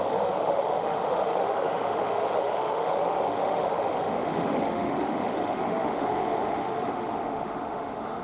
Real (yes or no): no